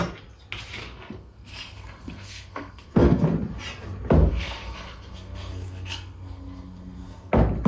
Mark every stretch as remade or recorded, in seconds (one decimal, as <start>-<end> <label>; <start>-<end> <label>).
0.0-0.8 recorded; 0.8-3.2 remade; 3.2-4.3 recorded; 4.3-7.3 remade; 7.3-7.7 recorded